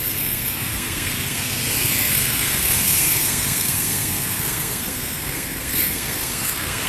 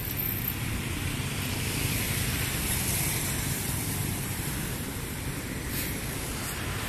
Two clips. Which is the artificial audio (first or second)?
first